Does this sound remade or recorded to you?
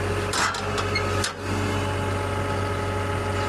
recorded